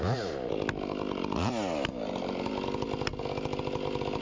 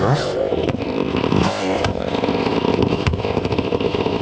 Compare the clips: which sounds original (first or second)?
first